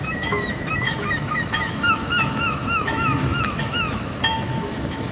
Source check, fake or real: fake